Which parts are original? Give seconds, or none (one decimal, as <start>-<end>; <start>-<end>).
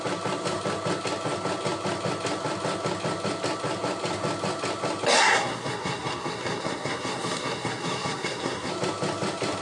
0.0-5.2; 8.7-9.6